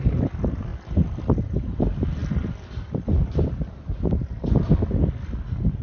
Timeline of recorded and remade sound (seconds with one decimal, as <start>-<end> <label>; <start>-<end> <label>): 0.0-5.8 recorded